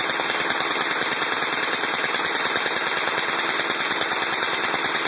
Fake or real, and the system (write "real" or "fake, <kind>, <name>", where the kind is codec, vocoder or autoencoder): real